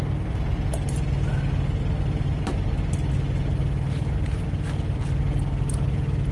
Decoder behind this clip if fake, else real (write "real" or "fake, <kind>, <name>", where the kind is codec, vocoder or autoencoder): real